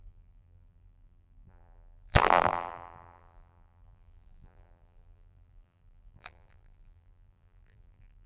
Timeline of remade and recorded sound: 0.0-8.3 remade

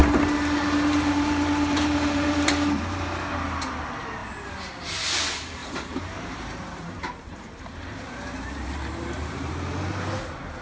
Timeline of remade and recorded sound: 0.0-3.3 remade; 3.3-5.6 recorded; 5.6-10.2 remade; 10.2-10.6 recorded